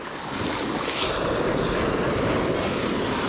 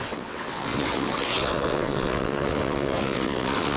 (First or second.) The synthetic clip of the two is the second